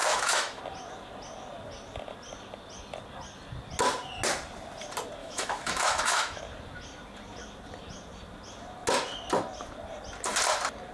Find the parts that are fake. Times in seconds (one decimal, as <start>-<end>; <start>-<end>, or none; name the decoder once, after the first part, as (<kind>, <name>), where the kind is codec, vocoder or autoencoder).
0.0-0.6 (autoencoder, DAC-VAE); 5.2-6.4